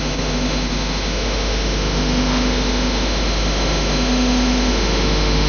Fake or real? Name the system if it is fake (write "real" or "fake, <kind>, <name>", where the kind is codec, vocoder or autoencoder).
fake, autoencoder, DAC-VAE